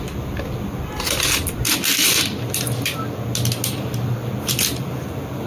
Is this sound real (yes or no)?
yes